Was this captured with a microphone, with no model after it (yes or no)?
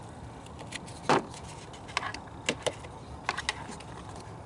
yes